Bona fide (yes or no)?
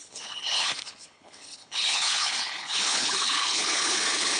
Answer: no